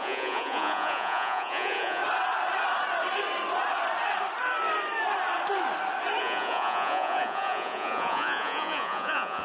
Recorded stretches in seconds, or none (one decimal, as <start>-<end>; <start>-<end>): 2.0-6.2